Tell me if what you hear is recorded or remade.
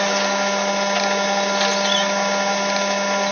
recorded